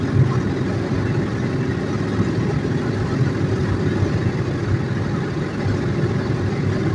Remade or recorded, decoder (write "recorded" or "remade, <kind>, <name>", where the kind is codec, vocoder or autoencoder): recorded